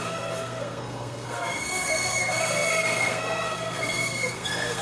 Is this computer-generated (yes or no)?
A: yes